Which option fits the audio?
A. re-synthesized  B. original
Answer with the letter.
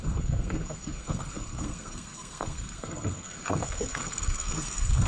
A